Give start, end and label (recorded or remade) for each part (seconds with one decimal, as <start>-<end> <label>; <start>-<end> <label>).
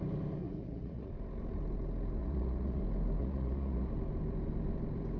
0.0-0.4 recorded; 0.4-1.1 remade; 1.1-2.2 recorded; 2.2-2.8 remade; 2.8-3.2 recorded; 3.2-3.9 remade; 3.9-5.2 recorded